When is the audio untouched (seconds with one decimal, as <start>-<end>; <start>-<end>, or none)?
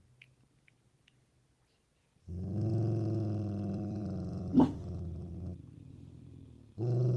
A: 0.0-2.7; 5.3-7.2